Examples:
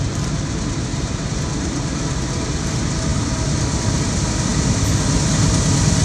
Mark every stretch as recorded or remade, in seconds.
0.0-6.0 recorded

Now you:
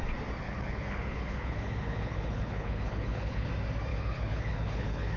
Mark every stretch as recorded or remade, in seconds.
0.0-0.4 recorded; 0.4-3.5 remade; 3.5-3.9 recorded; 3.9-5.2 remade

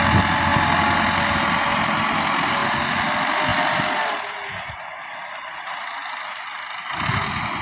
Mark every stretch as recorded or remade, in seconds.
0.0-7.6 recorded